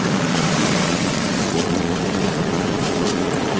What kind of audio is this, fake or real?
fake